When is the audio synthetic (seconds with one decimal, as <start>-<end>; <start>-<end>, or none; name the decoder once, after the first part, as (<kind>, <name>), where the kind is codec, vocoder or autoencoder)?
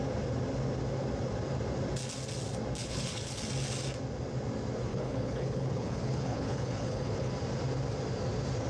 2.8-3.4 (codec, HILCodec); 4.9-7.3